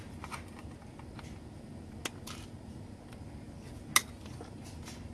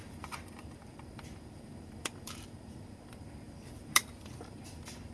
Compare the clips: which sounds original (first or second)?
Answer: first